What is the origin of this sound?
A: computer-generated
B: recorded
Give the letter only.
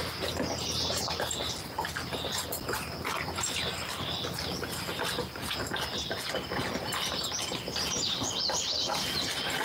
B